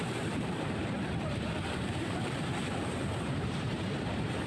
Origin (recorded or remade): remade